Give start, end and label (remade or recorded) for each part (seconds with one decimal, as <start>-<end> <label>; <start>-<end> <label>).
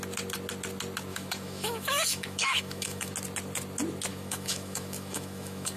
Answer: 0.0-1.1 recorded; 1.1-3.1 remade; 3.1-4.1 recorded; 4.1-5.8 remade